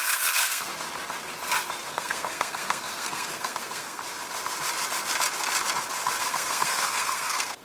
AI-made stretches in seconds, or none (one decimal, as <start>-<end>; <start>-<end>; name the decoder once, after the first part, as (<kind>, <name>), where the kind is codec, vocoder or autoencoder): 0.0-0.7 (codec, SNAC); 1.9-4.0; 6.2-7.6

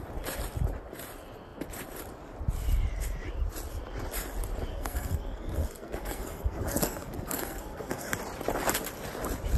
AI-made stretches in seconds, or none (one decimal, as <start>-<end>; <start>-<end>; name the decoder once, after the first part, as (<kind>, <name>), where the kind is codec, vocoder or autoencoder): 4.7-8.1 (codec, SNAC)

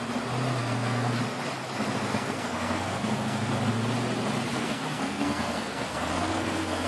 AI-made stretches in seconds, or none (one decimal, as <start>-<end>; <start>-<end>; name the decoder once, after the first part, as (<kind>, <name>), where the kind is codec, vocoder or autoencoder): 0.6-1.2 (codec, SNAC); 2.1-3.5; 4.5-6.9

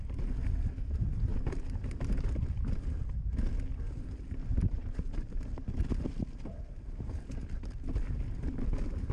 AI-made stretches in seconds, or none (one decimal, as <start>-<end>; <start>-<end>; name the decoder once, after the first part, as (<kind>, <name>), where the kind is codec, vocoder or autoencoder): none

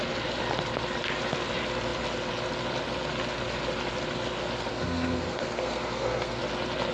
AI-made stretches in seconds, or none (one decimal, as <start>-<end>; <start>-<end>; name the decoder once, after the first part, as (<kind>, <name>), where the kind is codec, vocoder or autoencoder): 4.7-6.4 (codec, SNAC)